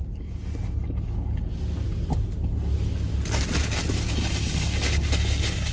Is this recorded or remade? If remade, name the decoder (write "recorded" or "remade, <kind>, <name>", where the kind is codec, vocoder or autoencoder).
recorded